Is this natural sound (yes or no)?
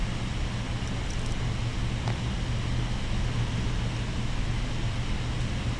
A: yes